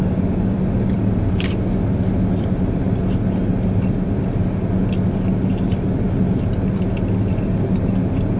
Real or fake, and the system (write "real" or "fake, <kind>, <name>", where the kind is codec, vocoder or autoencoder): real